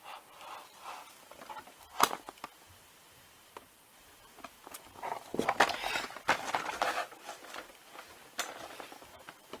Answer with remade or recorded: recorded